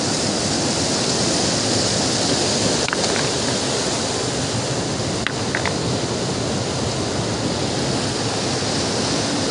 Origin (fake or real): real